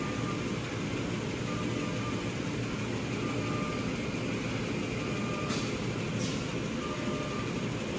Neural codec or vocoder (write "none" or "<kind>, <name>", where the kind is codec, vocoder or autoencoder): none